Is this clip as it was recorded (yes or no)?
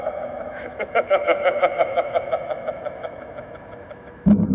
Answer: no